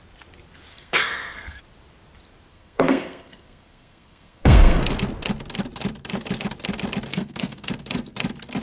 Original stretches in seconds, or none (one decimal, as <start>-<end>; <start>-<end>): 0.0-0.7; 1.6-2.5; 4.8-7.1; 7.7-8.6